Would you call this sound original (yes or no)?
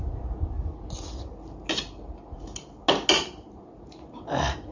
yes